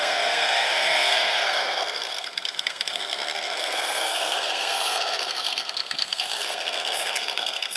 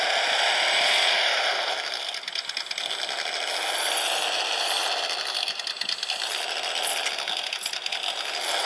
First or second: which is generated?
first